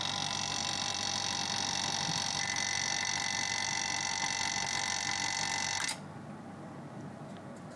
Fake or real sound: real